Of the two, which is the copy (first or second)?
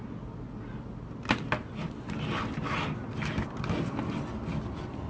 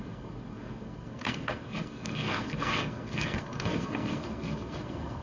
second